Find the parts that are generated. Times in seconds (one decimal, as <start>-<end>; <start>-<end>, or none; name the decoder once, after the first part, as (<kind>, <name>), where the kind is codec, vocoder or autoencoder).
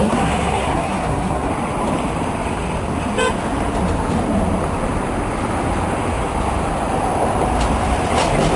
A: 0.0-1.5 (codec, SNAC)